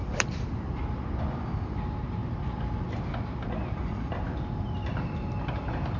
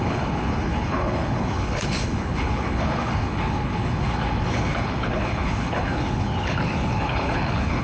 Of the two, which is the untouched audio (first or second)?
first